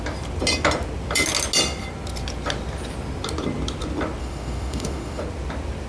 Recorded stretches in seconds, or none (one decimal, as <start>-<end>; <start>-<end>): 0.0-4.2; 5.2-5.9